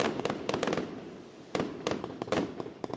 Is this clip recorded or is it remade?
recorded